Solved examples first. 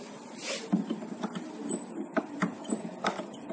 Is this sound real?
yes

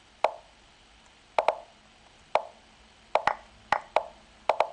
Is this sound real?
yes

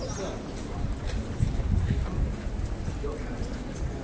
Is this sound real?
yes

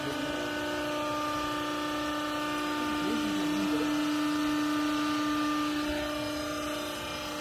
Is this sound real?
yes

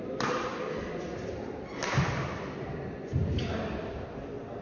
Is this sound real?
yes